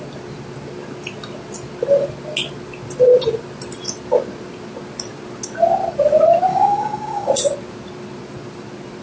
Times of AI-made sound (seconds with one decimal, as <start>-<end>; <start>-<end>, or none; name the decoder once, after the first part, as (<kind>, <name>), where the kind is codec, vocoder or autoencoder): 6.5-7.3 (codec, DAC)